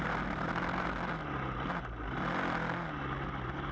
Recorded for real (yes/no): yes